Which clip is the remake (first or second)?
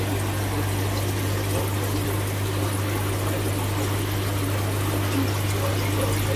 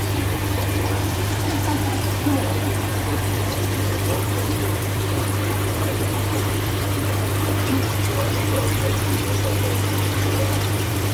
second